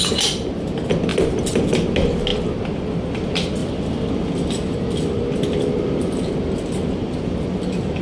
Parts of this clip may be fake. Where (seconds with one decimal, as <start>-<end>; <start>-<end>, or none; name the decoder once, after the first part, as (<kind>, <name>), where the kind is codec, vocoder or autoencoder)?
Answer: 1.1-1.6 (vocoder, BigVGAN v2); 3.6-4.9